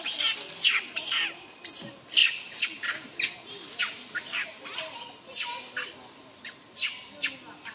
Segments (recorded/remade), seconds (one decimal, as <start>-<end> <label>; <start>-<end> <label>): 0.0-7.7 recorded